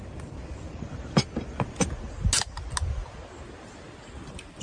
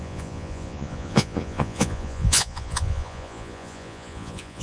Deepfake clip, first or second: second